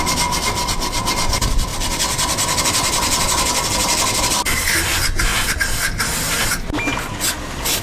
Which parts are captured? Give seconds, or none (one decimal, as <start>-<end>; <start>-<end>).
0.0-7.8